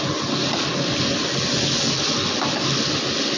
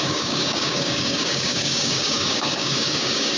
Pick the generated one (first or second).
second